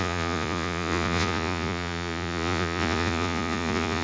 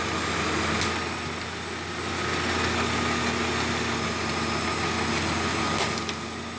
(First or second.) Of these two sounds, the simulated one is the first